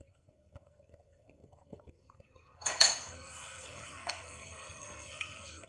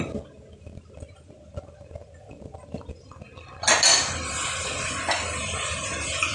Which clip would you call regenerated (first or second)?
first